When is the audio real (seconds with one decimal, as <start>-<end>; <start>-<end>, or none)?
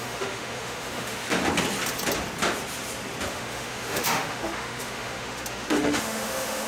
1.4-3.3